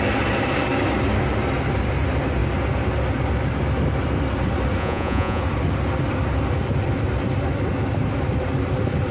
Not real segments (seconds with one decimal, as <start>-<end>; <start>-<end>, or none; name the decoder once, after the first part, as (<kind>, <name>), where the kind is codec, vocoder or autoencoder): 4.8-5.4 (vocoder, Vocos)